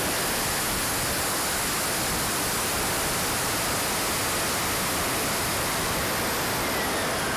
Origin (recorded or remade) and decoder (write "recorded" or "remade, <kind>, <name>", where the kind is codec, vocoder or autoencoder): recorded